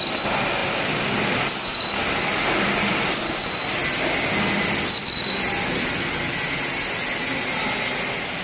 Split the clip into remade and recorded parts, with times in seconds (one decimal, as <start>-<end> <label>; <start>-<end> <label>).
0.0-8.4 recorded